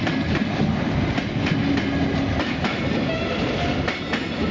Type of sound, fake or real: real